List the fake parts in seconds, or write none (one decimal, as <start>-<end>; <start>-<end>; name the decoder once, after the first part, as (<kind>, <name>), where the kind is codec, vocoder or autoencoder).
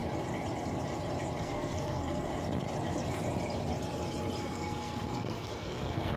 1.4-2.3 (codec, SNAC); 4.4-6.2